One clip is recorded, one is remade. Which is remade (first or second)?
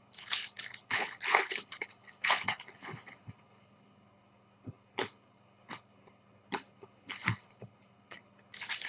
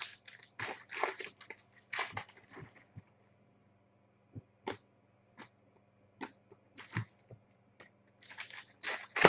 first